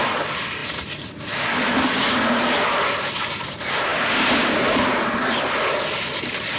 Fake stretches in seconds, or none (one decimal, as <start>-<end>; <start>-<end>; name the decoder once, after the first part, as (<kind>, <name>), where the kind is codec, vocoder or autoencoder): none